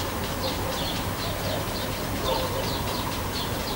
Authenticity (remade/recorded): recorded